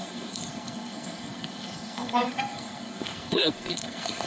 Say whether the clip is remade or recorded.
remade